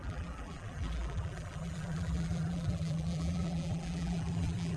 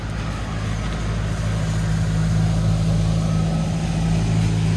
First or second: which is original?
second